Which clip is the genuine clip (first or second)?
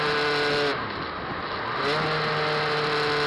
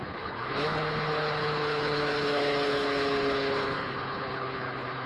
first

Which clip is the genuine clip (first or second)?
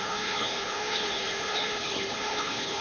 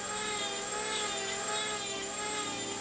second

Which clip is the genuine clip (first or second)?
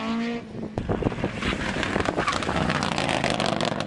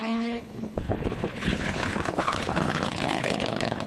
first